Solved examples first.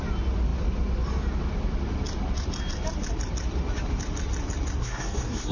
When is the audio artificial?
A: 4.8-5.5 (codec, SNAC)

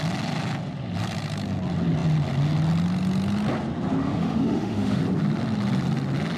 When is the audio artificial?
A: 4.0-5.0 (autoencoder, DAC-VAE)

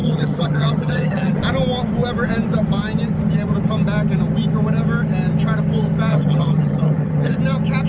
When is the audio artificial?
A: 0.0-1.4 (vocoder, HiFi-GAN); 6.1-7.4

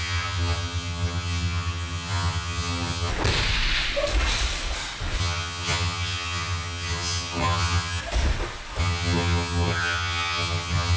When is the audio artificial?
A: 0.0-3.1 (vocoder, HiFi-GAN); 5.2-8.0; 8.8-11.0

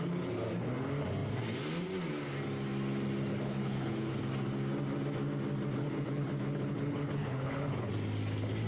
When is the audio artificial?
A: 3.3-4.2 (codec, HILCodec); 5.8-7.9

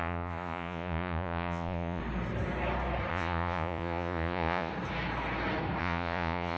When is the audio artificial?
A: 0.0-2.0 (vocoder, Vocos); 3.1-4.7; 5.8-6.6

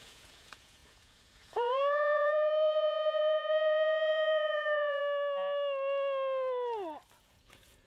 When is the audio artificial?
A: 0.0-5.0 (vocoder, Vocos); 7.2-7.9

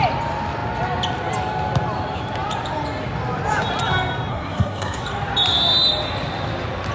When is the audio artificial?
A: 4.3-5.0 (codec, SNAC)